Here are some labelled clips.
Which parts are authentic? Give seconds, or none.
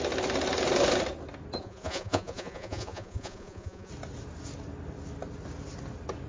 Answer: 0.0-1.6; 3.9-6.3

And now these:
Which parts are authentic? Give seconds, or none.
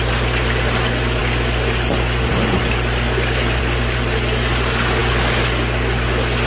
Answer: 0.0-6.5